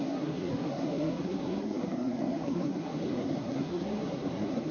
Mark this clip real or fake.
fake